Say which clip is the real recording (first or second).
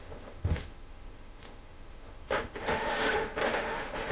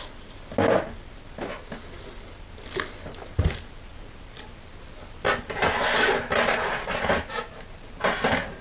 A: second